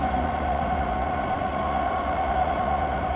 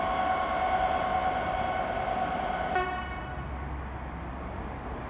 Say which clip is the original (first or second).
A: second